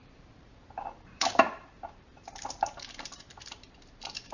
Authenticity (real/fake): fake